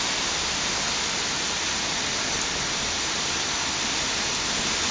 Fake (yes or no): no